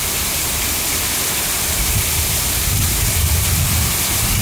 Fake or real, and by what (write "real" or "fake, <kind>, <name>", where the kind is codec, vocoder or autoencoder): fake, vocoder, BigVGAN v2